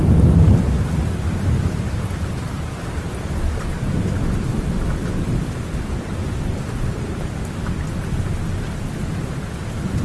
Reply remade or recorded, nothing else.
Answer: recorded